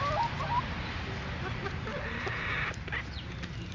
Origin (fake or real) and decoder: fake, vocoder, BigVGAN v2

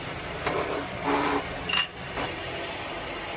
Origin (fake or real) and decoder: fake, vocoder, BigVGAN v2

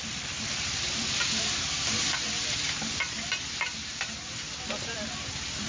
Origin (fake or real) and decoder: fake, vocoder, BigVGAN v2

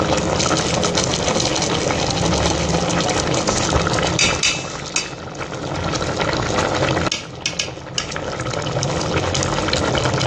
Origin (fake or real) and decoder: real